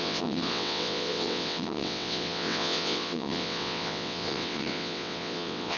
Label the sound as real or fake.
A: fake